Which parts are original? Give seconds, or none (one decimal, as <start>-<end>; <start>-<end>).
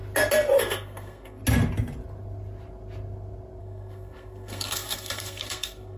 0.0-0.6; 1.4-3.6